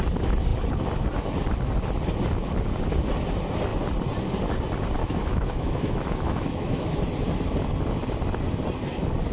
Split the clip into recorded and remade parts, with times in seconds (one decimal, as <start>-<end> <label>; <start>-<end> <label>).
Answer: 0.0-5.0 recorded; 5.0-7.0 remade; 7.0-9.3 recorded